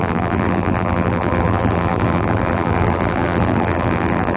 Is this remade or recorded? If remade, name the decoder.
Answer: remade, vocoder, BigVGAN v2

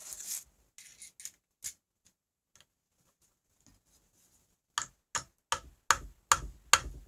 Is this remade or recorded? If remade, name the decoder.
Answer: recorded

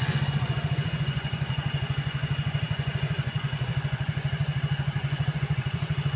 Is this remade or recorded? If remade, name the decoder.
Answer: remade, vocoder, Vocos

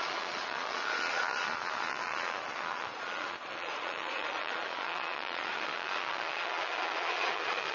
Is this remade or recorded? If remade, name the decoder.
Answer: remade, vocoder, Vocos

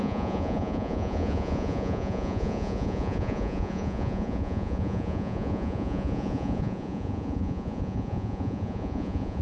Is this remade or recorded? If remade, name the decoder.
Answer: remade, vocoder, Vocos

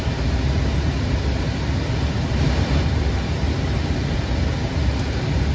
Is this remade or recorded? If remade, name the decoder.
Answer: recorded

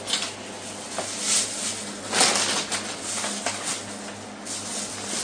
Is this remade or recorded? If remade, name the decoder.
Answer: recorded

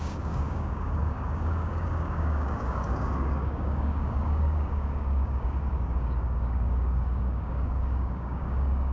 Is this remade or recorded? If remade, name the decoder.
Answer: remade, codec, DAC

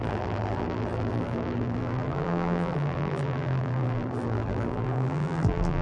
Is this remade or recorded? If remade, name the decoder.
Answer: remade, vocoder, BigVGAN v2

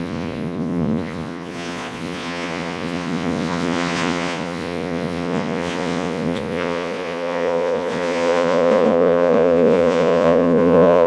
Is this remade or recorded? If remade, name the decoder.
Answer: remade, vocoder, Vocos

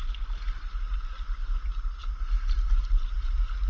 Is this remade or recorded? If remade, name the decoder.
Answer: recorded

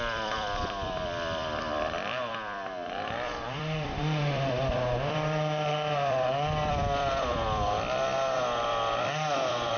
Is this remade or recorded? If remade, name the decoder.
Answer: remade, vocoder, BigVGAN v2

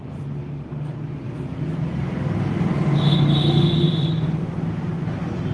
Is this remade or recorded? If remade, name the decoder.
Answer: recorded